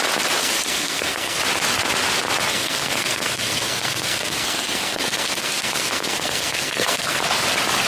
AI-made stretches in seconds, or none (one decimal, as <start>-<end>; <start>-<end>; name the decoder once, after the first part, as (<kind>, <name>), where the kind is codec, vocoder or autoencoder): 0.4-1.4 (codec, SNAC); 2.5-7.2